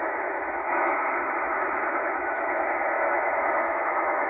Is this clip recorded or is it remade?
remade